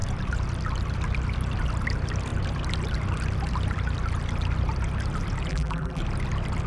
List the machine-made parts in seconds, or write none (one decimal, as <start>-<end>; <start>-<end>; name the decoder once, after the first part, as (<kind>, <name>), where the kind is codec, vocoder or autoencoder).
5.5-6.0 (vocoder, BigVGAN v2)